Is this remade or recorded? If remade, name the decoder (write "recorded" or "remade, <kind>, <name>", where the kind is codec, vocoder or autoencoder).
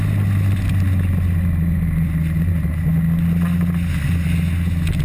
recorded